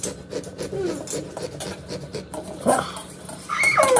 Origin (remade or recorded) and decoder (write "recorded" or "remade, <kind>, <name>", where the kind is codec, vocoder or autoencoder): recorded